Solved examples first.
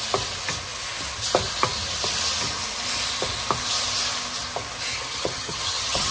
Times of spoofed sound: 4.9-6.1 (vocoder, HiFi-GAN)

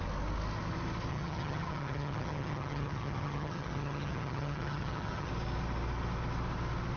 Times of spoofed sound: 1.1-5.3 (vocoder, HiFi-GAN)

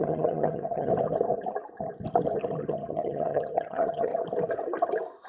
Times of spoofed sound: 0.0-0.9 (vocoder, HiFi-GAN); 2.6-4.1

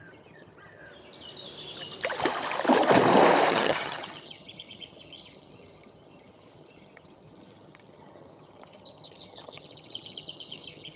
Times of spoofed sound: 0.0-0.8 (vocoder, HiFi-GAN); 3.5-11.0

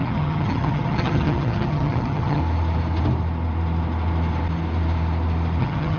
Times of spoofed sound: 0.0-2.4 (vocoder, HiFi-GAN); 5.6-6.0

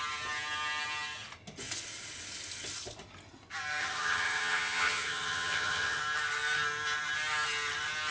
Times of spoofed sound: 3.8-6.0 (vocoder, HiFi-GAN)